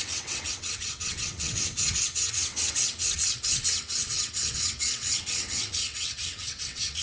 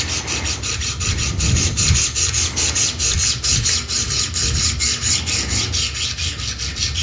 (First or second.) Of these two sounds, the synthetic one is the first